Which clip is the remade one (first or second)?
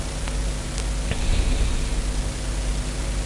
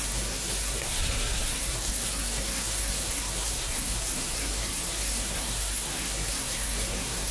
second